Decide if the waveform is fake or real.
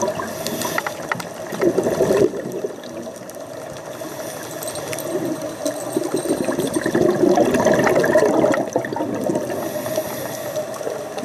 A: real